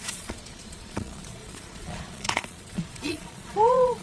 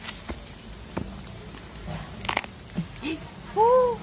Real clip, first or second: second